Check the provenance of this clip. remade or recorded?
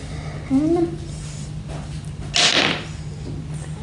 recorded